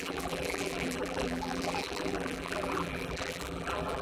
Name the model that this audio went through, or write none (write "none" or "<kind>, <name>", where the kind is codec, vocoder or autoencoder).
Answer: vocoder, BigVGAN v2